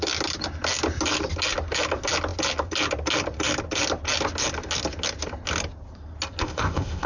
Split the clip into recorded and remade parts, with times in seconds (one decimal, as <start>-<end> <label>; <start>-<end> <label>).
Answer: 0.0-6.4 recorded; 6.4-7.1 remade